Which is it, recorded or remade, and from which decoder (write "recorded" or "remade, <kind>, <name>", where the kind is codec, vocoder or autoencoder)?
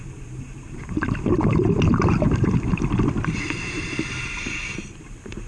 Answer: recorded